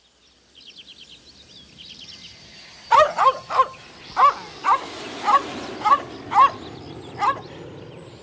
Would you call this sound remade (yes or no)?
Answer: no